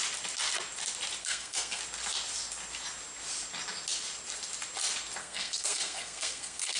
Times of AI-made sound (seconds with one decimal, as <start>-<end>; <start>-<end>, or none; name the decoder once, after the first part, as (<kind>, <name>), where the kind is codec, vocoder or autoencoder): 1.2-1.8 (codec, SNAC); 5.2-6.8

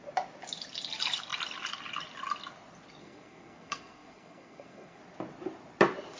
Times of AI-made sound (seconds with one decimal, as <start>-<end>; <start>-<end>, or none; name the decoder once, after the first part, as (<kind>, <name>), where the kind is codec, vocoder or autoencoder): 3.0-5.0 (codec, SNAC)

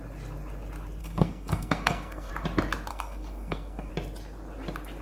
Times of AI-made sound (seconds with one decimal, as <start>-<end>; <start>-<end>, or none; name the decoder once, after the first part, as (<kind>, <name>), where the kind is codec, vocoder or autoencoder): 1.0-2.3 (codec, SNAC); 2.9-3.9

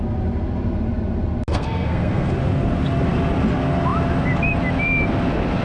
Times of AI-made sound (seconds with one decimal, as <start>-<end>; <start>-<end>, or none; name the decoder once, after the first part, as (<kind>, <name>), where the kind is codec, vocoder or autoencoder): 1.5-2.3 (codec, SNAC)

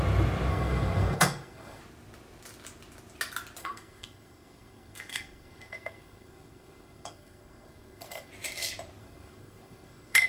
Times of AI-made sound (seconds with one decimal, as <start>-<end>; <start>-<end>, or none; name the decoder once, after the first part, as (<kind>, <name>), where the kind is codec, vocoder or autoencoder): 0.5-1.8 (codec, SNAC); 3.6-8.3; 9.0-10.3

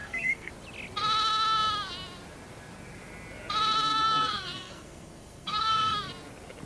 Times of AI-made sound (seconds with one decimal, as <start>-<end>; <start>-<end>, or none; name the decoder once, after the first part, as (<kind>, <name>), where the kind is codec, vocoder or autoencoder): 0.0-0.5 (codec, SNAC); 3.9-6.1

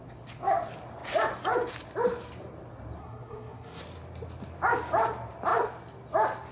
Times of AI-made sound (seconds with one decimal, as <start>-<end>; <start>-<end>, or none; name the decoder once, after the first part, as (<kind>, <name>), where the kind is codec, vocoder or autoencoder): 3.0-3.8 (codec, SNAC)

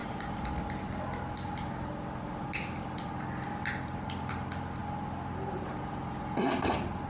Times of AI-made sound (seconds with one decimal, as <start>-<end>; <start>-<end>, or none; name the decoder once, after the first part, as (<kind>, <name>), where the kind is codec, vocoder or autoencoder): none